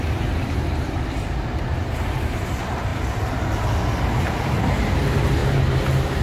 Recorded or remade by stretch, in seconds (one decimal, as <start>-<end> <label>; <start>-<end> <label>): 0.0-2.9 remade; 2.9-4.2 recorded; 4.2-6.2 remade